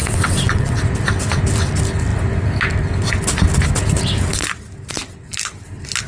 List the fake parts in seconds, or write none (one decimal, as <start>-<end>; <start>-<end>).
0.0-0.8